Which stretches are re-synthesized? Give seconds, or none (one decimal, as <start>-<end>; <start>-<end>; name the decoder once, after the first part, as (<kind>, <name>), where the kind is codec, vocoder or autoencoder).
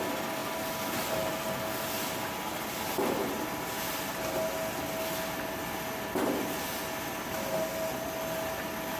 none